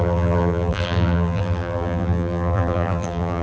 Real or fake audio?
fake